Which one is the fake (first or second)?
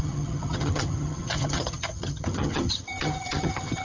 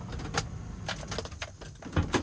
first